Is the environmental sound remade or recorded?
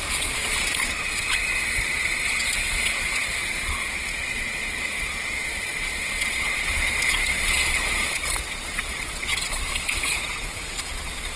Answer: remade